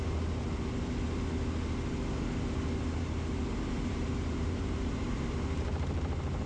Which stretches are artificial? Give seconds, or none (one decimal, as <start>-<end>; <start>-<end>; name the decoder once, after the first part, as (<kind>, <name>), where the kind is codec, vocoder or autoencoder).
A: 3.9-6.5 (vocoder, BigVGAN v2)